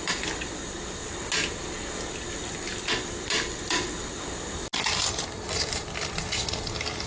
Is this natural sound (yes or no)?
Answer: yes